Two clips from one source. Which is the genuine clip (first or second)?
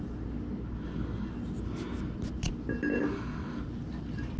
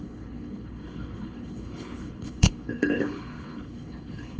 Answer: first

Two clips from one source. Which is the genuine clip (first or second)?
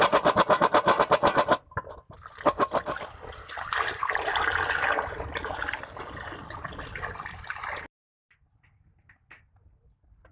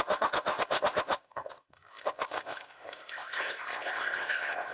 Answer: first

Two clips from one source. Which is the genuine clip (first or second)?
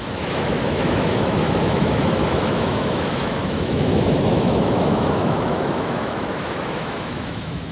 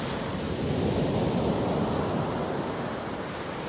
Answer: second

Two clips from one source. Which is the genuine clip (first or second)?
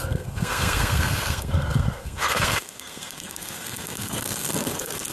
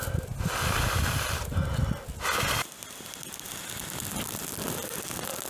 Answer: second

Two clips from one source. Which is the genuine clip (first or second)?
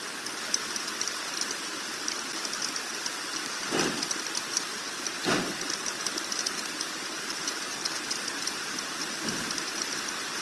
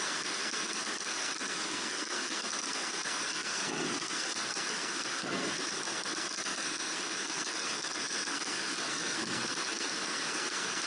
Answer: first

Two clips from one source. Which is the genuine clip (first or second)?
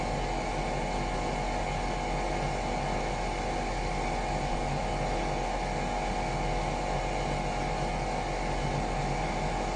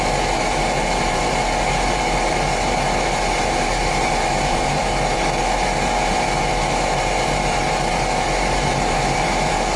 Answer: first